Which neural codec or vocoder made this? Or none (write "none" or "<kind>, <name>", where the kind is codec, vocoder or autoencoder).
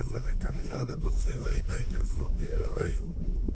codec, SNAC